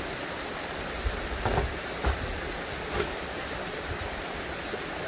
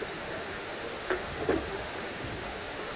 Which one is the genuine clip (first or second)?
first